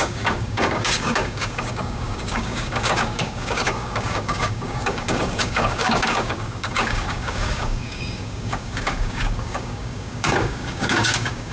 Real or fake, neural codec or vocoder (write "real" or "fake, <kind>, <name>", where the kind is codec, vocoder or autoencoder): fake, codec, DAC